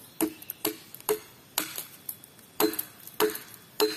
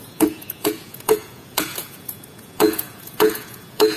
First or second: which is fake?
second